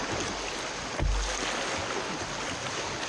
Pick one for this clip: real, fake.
real